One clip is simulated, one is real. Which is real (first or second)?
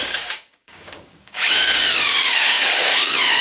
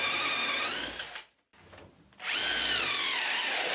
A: second